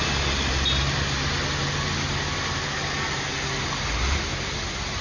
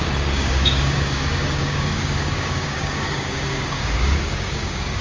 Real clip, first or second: first